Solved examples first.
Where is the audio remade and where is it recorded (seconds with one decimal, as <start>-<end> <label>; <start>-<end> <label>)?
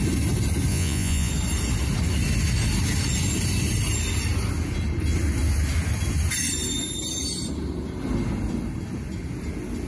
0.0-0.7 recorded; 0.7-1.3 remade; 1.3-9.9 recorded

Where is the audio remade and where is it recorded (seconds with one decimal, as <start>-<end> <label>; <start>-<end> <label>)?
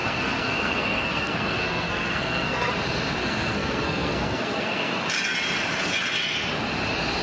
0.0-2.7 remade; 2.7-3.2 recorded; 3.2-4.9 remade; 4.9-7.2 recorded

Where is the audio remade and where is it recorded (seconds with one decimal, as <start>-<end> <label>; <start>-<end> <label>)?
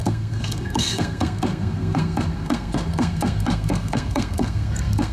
0.0-5.1 remade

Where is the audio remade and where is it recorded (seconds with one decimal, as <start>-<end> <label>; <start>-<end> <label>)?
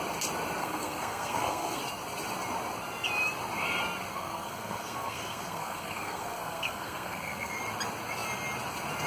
0.0-0.6 recorded; 0.6-1.8 remade; 1.8-4.1 recorded; 4.1-7.6 remade; 7.6-9.1 recorded